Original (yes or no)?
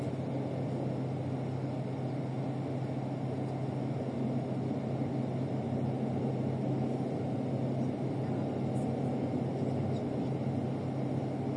yes